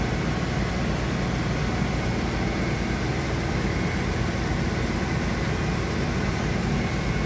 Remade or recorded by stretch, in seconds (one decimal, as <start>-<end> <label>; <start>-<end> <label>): 0.0-3.9 recorded; 3.9-4.7 remade; 4.7-7.3 recorded